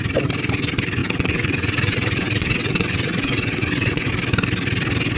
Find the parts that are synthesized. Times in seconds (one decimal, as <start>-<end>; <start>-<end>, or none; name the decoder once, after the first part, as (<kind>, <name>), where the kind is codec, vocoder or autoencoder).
1.0-4.1 (vocoder, WaveNeXt)

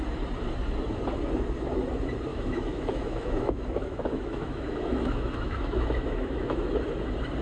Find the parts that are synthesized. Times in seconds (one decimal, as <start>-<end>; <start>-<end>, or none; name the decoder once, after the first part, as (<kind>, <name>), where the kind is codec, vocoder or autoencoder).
2.3-6.7 (autoencoder, DAC-VAE)

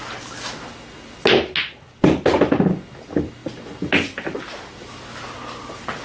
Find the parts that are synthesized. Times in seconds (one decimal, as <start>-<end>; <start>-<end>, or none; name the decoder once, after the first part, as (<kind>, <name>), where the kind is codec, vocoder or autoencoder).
none

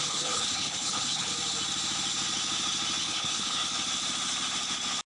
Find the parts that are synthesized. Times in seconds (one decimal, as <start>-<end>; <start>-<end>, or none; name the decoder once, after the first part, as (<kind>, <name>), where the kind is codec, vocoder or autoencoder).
0.0-1.3 (codec, HILCodec); 3.0-3.6

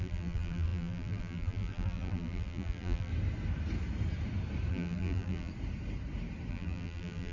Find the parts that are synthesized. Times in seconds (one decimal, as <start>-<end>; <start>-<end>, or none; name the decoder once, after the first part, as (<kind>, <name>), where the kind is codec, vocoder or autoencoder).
0.0-3.1 (vocoder, BigVGAN v2); 4.7-5.5; 6.5-7.3